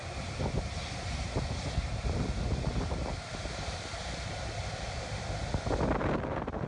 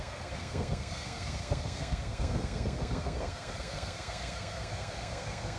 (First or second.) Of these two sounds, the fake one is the second